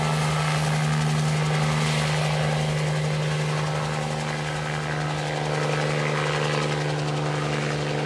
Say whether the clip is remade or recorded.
recorded